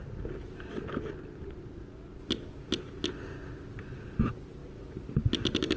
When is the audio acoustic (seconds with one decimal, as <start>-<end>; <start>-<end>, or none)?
0.0-5.8

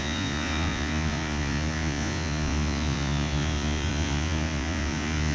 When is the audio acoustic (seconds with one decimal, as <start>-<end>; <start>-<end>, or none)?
none

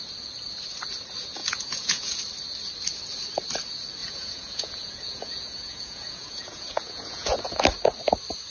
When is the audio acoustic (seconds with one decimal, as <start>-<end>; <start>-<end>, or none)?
0.0-1.4; 2.2-4.0; 7.6-8.5

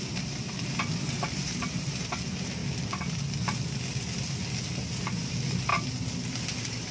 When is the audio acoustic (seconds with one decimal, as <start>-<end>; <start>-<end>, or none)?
2.6-5.0; 5.7-6.9

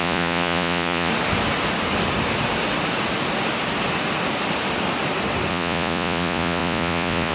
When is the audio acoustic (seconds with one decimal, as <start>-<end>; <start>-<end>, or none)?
1.1-5.5